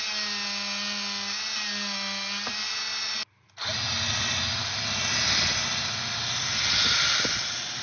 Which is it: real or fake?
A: real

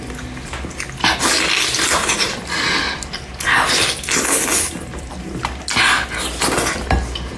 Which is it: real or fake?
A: real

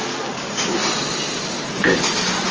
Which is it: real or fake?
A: real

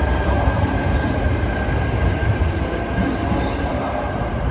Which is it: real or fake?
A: fake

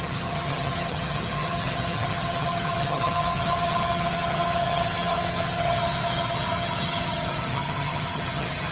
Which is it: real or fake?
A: fake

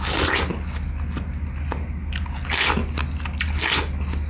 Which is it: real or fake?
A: real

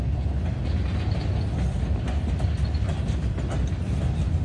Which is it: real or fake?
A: real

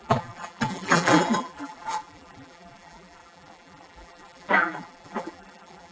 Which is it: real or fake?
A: fake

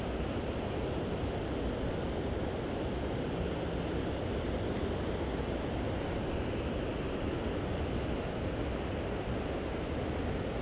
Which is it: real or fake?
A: real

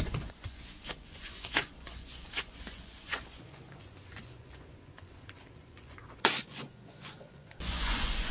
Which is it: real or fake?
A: fake